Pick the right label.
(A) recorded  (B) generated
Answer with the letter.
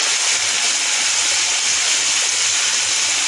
A